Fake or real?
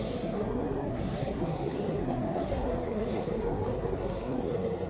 fake